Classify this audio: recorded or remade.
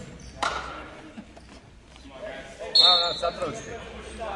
recorded